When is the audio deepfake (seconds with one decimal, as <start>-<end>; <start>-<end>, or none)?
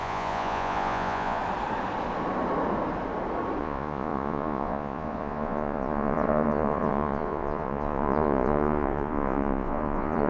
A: 0.0-1.4; 3.6-10.3